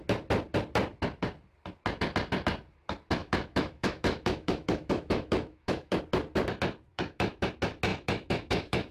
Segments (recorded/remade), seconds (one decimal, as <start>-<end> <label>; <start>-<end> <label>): 0.0-3.2 recorded; 3.2-6.0 remade; 6.0-6.9 recorded; 6.9-7.5 remade; 7.5-7.9 recorded; 7.9-8.9 remade